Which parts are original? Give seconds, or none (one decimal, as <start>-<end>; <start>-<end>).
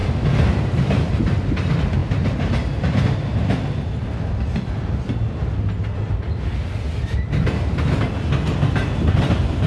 1.1-9.7